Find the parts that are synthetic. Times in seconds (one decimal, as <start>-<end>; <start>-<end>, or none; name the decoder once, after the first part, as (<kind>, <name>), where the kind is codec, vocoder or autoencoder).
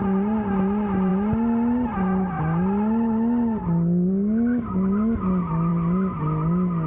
none